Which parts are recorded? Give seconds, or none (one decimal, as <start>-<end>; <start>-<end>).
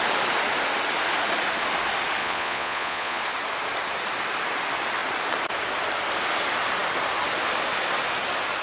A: 0.0-2.2; 3.2-8.6